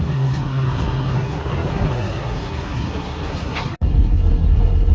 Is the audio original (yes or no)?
no